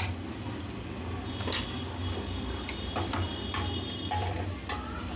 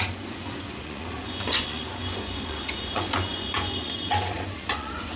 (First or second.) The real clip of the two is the first